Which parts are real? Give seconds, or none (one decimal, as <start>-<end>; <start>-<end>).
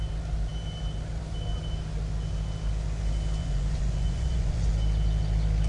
0.0-3.4; 4.7-5.7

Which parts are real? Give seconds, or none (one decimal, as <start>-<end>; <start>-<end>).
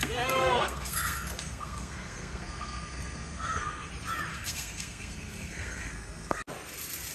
3.9-4.3; 6.4-7.1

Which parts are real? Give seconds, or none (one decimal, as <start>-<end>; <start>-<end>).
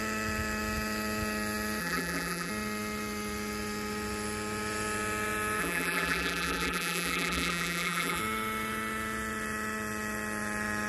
0.0-1.8; 2.5-5.6; 8.2-10.9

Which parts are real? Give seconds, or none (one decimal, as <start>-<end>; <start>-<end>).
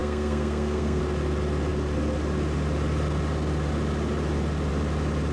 1.0-5.3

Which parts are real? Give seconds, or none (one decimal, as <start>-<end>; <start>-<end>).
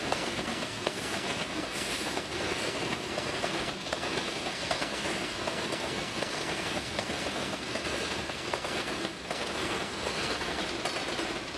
10.6-11.6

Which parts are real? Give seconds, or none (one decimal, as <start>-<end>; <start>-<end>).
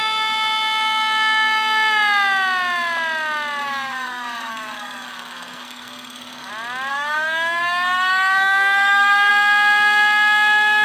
0.0-3.6; 6.5-6.9; 9.3-10.8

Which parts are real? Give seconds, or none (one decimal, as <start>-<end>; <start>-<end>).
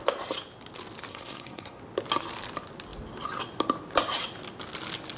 0.0-1.1; 1.8-5.2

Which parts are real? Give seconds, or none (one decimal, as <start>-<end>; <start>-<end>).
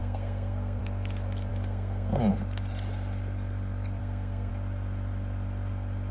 0.8-1.5; 2.2-4.0; 4.5-6.1